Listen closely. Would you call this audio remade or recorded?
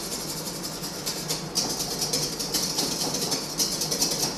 recorded